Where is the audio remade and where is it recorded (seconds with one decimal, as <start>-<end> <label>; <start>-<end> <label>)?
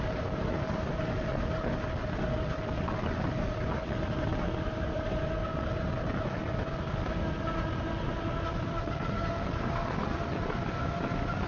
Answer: 0.0-11.5 recorded